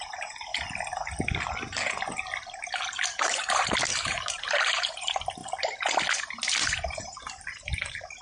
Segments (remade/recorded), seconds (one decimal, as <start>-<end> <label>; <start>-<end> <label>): 0.0-0.5 remade; 0.5-3.2 recorded; 3.2-5.4 remade; 5.4-6.2 recorded; 6.2-8.2 remade